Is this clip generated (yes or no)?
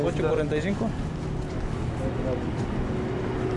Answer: no